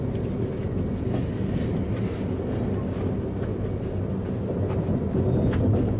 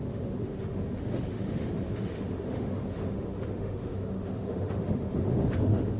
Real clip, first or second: first